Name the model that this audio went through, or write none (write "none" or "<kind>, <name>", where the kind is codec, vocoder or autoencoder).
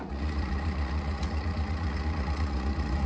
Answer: vocoder, Vocos